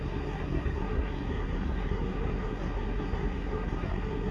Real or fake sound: fake